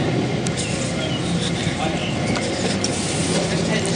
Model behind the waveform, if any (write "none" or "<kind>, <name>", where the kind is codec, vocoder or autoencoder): none